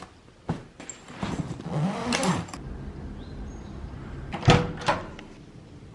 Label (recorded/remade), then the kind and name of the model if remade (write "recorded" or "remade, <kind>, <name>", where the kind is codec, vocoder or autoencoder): recorded